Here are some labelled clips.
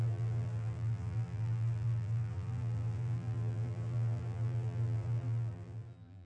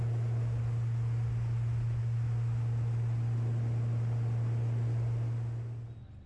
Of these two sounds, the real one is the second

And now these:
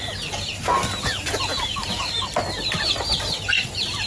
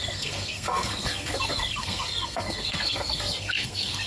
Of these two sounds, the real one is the first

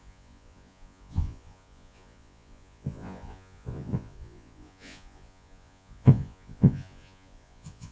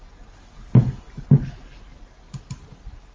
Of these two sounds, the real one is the second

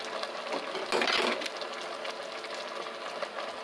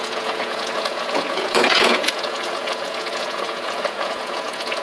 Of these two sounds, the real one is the first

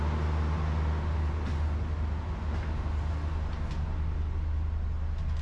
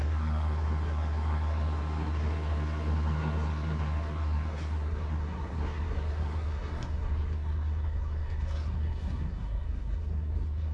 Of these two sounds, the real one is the first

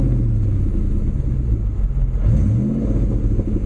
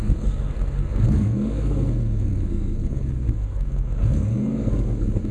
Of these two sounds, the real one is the first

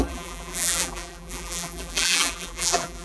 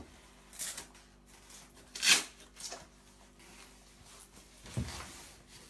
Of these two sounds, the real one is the second